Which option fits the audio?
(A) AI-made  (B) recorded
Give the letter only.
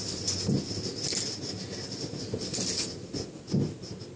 B